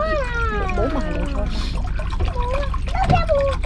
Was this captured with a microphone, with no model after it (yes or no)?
yes